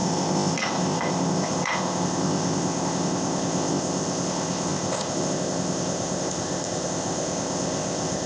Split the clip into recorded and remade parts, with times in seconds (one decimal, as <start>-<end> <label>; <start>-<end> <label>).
0.0-8.3 remade